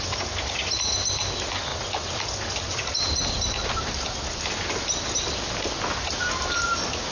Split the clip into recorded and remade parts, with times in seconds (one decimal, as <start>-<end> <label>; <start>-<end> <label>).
0.0-7.1 recorded